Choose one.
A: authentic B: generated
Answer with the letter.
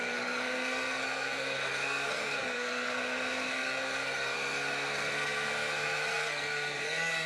B